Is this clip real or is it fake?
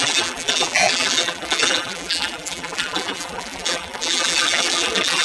fake